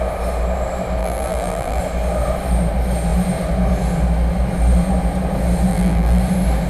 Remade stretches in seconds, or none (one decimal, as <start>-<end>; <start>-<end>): 1.0-1.8; 5.7-6.2